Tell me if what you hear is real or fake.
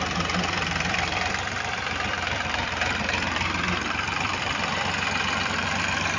fake